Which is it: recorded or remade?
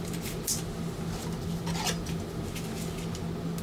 recorded